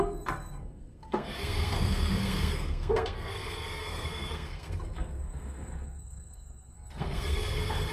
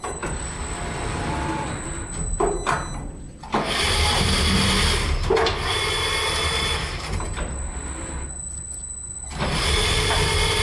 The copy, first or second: first